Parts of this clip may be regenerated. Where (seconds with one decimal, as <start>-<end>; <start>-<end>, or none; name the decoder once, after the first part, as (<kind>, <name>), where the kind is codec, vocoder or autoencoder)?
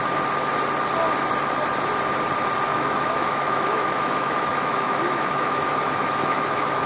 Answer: 2.7-6.9 (autoencoder, DAC-VAE)